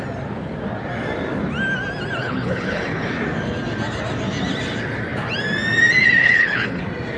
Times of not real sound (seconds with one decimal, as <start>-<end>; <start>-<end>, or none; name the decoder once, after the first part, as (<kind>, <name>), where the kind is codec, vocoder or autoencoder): 2.2-3.1 (codec, HILCodec); 6.2-6.8